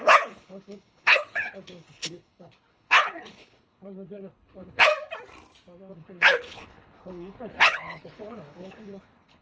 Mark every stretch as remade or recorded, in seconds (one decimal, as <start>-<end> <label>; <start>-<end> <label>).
0.0-4.9 remade; 4.9-5.9 recorded; 5.9-9.4 remade